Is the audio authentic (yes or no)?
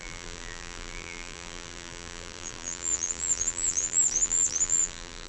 no